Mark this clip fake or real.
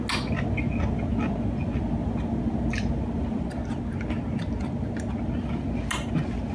real